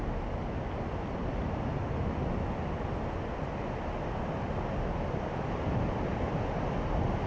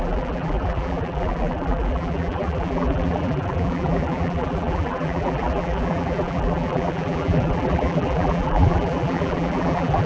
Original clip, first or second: first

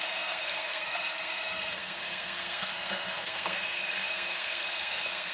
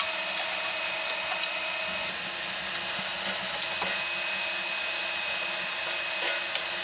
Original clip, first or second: second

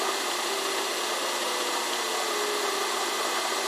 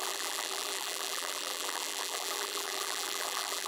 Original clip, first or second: first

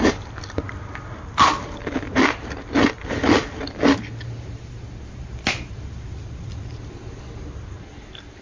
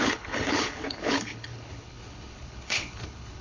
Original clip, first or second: first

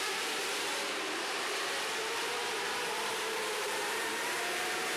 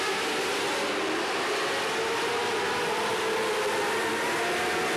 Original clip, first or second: second